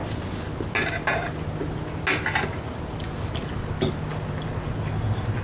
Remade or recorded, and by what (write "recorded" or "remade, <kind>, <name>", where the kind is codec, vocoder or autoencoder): recorded